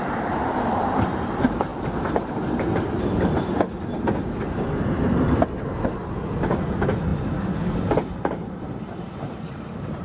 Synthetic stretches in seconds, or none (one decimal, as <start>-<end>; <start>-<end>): 0.0-1.7; 6.3-10.0